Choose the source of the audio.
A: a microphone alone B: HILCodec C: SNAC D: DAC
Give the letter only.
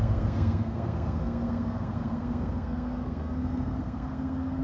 C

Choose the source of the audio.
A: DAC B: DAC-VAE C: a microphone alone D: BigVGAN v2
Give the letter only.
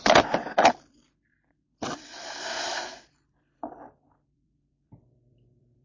D